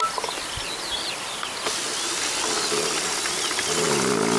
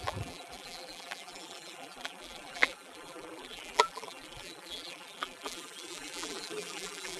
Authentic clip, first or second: first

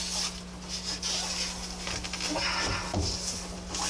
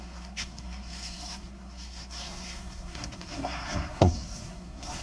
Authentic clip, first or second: first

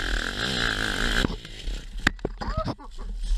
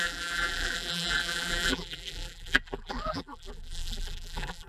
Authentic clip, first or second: first